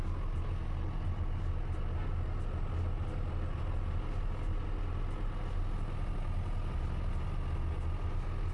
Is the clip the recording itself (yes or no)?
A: yes